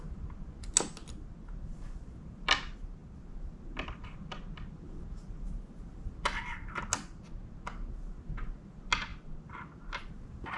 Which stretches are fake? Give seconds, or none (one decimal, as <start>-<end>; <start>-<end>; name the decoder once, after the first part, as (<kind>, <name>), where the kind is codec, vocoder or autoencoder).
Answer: none